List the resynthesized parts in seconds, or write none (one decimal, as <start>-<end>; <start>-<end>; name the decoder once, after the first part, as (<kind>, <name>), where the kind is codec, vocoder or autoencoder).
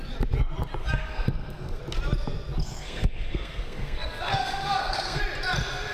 0.8-1.8 (codec, SNAC); 2.6-5.2